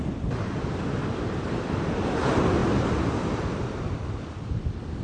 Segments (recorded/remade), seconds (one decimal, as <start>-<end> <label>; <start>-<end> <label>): 0.0-5.0 recorded